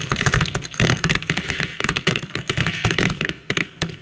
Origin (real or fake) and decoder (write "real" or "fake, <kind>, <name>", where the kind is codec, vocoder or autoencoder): fake, codec, SNAC